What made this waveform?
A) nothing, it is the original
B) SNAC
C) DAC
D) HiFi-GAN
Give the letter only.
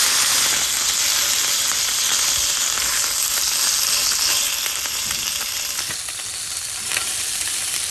A